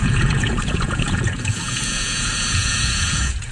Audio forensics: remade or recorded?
remade